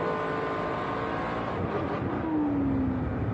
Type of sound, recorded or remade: recorded